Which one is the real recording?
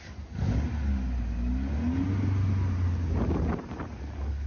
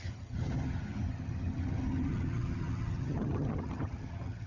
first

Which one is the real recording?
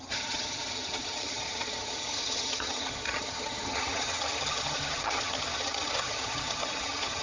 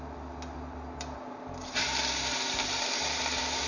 second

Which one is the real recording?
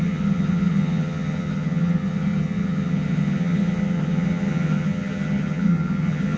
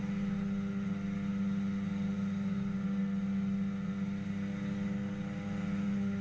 second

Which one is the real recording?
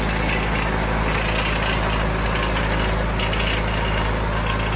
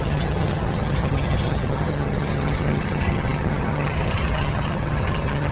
first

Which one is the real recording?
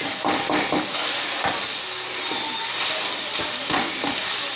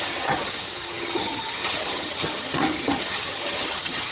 first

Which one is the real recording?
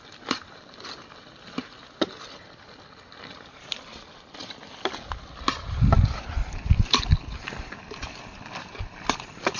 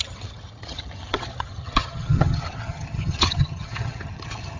first